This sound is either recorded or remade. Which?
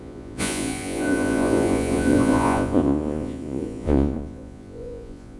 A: remade